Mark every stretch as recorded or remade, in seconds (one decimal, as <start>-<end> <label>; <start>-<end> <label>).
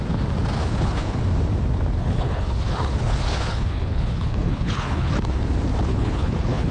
0.0-0.6 recorded; 0.6-1.2 remade; 1.2-2.0 recorded; 2.0-5.1 remade; 5.1-5.9 recorded; 5.9-6.7 remade